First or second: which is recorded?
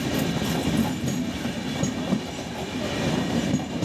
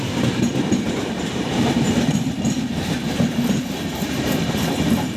first